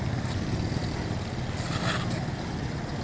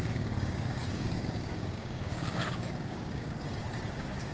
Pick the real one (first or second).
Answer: first